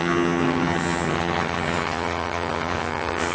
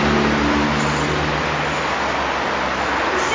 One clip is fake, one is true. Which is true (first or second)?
second